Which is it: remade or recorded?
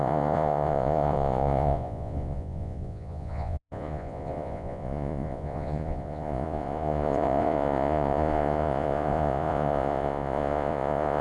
remade